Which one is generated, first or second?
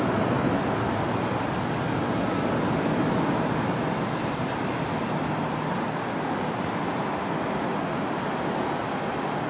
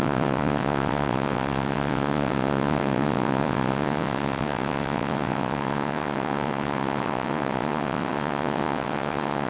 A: second